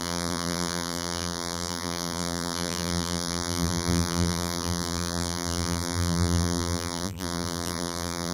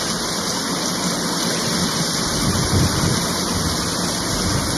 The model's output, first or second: first